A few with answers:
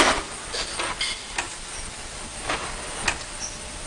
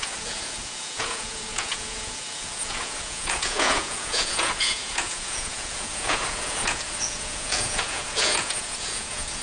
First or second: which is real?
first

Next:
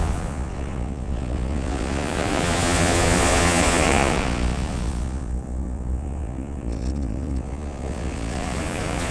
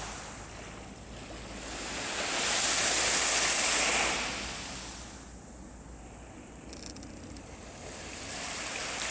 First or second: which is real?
second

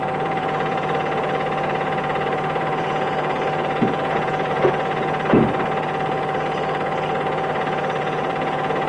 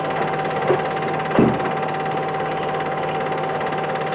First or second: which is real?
second